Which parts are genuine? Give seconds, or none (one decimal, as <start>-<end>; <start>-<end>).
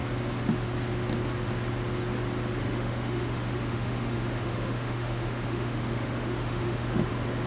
0.0-2.6; 7.1-7.5